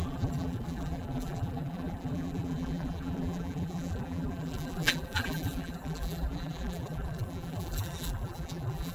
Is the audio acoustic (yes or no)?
no